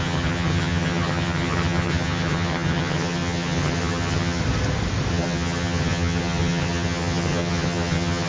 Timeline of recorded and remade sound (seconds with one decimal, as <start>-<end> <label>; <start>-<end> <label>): 0.0-4.4 remade; 4.4-5.1 recorded; 5.1-8.3 remade